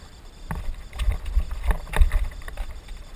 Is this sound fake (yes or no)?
yes